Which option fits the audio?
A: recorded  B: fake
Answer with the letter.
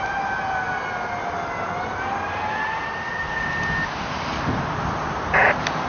A